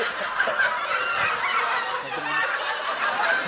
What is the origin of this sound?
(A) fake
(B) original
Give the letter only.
B